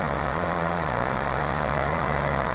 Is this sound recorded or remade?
remade